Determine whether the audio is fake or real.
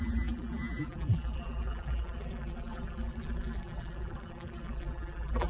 fake